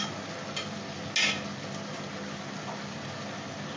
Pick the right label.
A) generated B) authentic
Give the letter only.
B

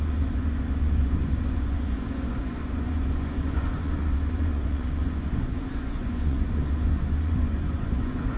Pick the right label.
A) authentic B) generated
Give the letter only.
B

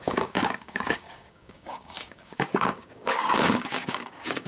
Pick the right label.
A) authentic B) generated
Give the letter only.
B